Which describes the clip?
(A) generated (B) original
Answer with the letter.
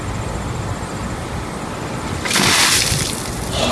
B